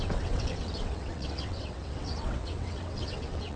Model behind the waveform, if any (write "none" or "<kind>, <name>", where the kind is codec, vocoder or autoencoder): vocoder, WaveNeXt